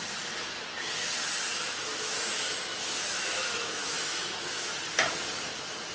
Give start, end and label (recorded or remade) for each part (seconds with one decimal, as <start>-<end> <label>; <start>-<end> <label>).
0.0-1.5 recorded; 1.5-2.3 remade; 2.3-2.7 recorded; 2.7-4.7 remade; 4.7-5.9 recorded